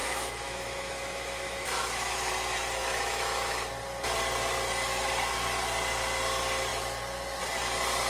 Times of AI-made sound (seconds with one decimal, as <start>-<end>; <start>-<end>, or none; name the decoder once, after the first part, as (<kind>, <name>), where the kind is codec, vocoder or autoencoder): 0.0-2.3 (autoencoder, DAC-VAE); 2.8-3.6